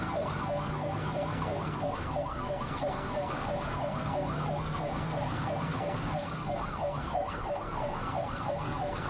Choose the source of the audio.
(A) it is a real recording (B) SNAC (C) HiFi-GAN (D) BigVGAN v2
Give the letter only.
B